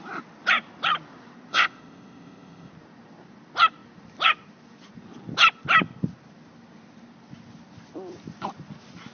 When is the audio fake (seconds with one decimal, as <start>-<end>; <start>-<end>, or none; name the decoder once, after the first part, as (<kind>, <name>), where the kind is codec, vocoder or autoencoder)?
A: 1.5-2.7 (codec, ZipCodec)